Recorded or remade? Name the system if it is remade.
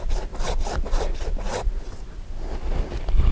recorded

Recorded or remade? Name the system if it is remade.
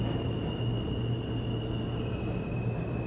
recorded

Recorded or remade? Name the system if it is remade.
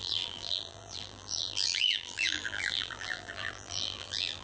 remade, vocoder, BigVGAN v2